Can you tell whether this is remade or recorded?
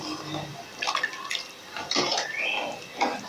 recorded